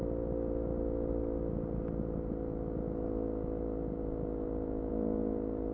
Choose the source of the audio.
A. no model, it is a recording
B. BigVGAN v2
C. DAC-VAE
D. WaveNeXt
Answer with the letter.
A